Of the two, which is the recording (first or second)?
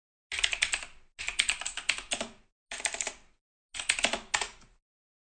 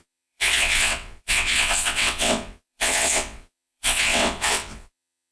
first